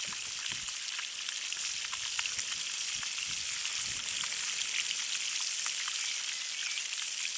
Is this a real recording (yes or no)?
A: yes